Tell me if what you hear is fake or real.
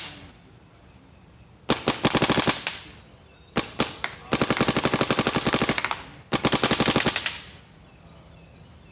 real